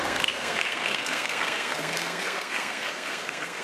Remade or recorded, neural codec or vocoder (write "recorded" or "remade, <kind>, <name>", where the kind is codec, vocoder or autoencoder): remade, codec, SNAC